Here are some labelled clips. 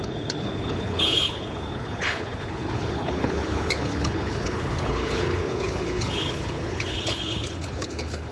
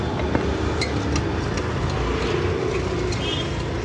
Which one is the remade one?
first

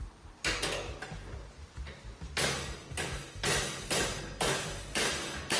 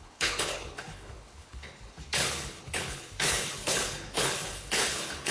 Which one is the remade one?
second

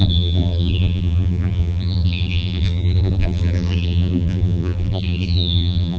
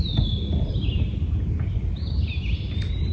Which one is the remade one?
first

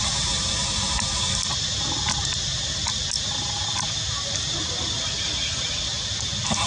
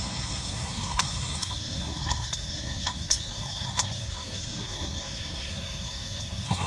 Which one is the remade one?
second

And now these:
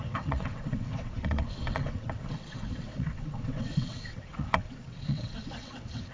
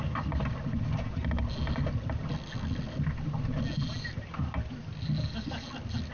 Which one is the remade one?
first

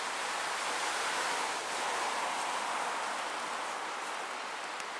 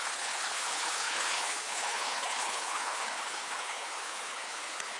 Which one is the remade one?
second